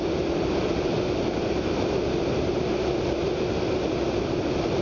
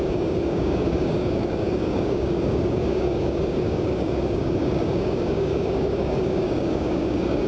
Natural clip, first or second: first